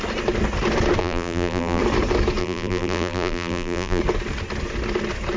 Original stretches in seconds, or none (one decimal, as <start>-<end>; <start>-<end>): 0.0-1.0; 1.8-2.4; 4.0-5.4